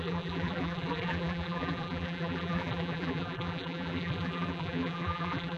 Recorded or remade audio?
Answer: remade